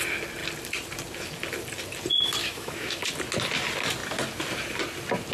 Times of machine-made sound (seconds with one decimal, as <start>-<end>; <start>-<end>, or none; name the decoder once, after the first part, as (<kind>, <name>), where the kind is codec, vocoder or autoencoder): 2.4-3.1 (autoencoder, DAC-VAE)